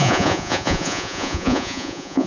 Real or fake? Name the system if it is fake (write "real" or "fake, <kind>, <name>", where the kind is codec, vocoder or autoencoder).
fake, vocoder, Vocos